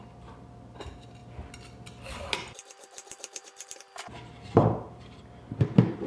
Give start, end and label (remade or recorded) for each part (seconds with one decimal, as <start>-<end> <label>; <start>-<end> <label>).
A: 0.0-3.3 recorded; 3.3-5.2 remade; 5.2-6.1 recorded